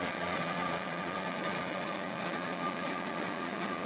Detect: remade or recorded remade